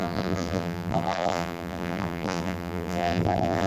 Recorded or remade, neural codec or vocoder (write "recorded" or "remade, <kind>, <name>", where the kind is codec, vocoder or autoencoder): remade, vocoder, BigVGAN v2